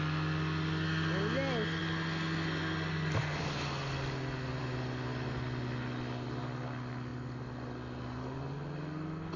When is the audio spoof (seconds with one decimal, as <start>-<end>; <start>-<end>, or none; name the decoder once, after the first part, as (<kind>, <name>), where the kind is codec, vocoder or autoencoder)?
none